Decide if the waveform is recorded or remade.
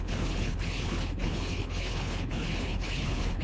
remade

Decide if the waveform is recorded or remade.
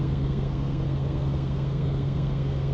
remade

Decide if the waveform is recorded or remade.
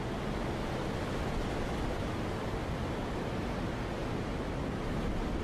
recorded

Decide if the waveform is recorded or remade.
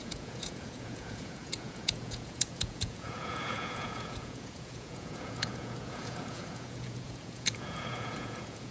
remade